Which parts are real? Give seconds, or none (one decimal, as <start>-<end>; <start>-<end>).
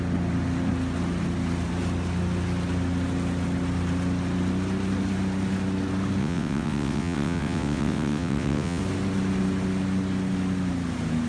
0.0-6.2; 8.8-11.3